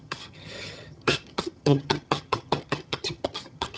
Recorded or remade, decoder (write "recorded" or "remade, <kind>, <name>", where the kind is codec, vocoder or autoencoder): remade, vocoder, HiFi-GAN